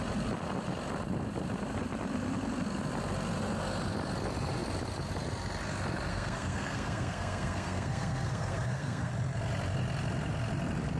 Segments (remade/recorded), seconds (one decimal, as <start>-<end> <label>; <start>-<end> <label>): 0.0-6.1 recorded; 6.1-9.1 remade; 9.1-11.0 recorded

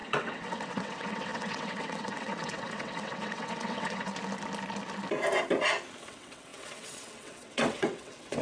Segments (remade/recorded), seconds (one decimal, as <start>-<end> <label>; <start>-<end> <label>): 0.0-4.1 remade; 4.1-6.0 recorded; 6.0-8.4 remade

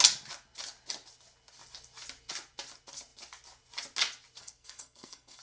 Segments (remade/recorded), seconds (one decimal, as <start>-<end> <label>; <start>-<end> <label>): 0.0-4.4 recorded; 4.4-5.4 remade

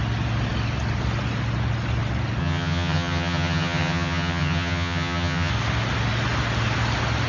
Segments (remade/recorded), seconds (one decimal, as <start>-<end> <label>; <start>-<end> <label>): 0.0-2.4 recorded; 2.4-5.5 remade; 5.5-7.3 recorded

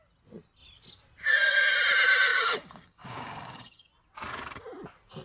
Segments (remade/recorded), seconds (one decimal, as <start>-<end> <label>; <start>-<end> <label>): 0.0-2.3 recorded; 2.3-3.9 remade; 3.9-5.2 recorded